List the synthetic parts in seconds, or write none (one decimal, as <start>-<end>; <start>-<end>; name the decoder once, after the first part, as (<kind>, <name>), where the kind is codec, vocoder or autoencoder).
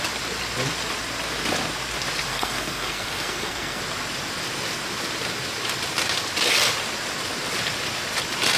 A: 2.3-3.8 (codec, SNAC)